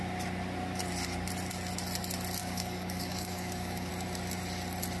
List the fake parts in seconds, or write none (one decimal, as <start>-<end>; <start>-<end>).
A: 2.4-3.9